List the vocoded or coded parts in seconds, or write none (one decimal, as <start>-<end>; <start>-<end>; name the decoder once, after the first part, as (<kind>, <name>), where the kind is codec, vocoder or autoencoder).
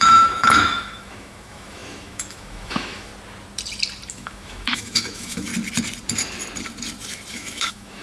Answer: 0.0-3.1 (autoencoder, DAC-VAE); 4.1-5.5; 7.3-8.0